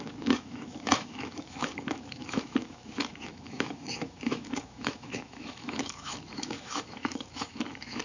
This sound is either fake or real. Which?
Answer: fake